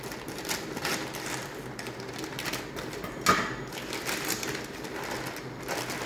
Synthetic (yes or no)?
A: no